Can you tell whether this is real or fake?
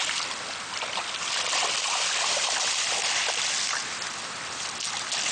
real